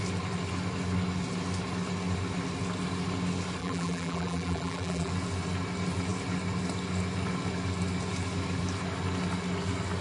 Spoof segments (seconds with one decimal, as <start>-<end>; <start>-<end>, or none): 3.6-5.1